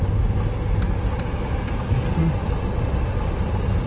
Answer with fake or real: real